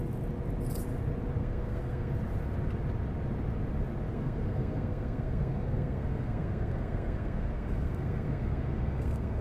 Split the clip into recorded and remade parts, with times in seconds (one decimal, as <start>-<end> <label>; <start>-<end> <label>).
0.0-1.4 recorded; 1.4-2.1 remade; 2.1-4.1 recorded; 4.1-9.4 remade